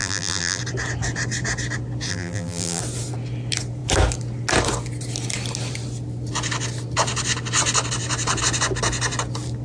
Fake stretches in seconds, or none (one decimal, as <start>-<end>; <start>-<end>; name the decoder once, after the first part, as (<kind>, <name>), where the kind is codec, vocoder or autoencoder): 0.0-0.6 (vocoder, BigVGAN v2); 2.1-2.8